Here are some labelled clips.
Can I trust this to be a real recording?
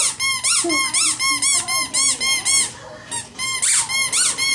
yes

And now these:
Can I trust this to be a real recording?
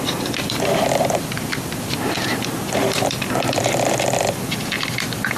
no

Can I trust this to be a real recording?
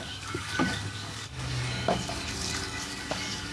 no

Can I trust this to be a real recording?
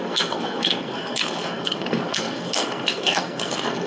no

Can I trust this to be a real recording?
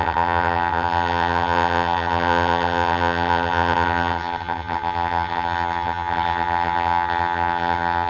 no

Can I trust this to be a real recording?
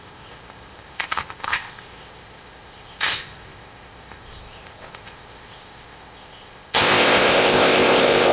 no